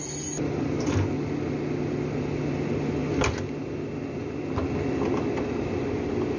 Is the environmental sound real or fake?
real